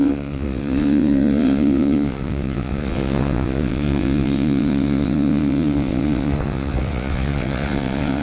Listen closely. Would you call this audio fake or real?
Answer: fake